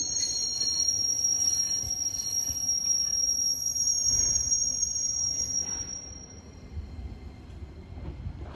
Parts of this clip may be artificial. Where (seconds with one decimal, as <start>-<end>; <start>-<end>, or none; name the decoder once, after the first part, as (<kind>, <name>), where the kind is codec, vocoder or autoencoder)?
0.8-1.8 (vocoder, BigVGAN v2); 2.7-7.7